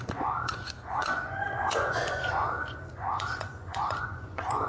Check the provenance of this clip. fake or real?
fake